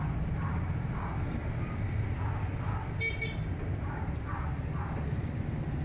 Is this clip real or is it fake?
real